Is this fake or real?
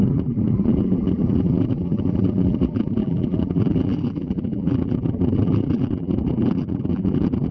fake